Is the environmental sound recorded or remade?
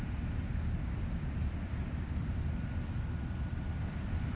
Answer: recorded